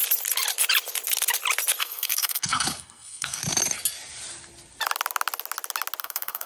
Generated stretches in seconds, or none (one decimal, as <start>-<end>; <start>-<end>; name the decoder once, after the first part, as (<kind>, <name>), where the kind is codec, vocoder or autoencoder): 1.8-3.4 (codec, SNAC); 6.0-6.5

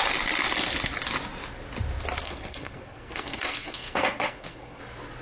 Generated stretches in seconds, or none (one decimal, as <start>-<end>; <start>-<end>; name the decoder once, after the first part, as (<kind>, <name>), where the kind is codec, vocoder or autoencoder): 2.2-4.8 (codec, SNAC)

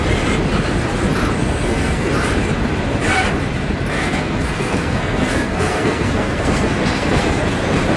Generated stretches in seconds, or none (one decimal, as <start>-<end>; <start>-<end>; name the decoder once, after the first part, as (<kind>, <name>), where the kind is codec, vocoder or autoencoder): 1.4-2.1 (codec, SNAC); 3.9-7.4